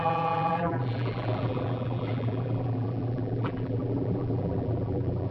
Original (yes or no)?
no